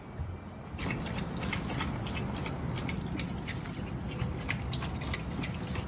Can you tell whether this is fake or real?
real